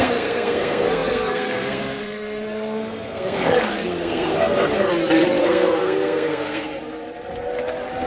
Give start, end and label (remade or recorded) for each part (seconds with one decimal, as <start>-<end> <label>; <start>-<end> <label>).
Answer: 0.0-4.9 remade; 4.9-5.4 recorded; 5.4-6.7 remade; 6.7-8.1 recorded